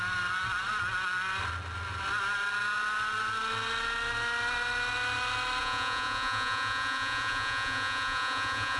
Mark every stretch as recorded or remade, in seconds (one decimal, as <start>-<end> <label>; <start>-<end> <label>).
0.0-5.6 recorded; 5.6-8.8 remade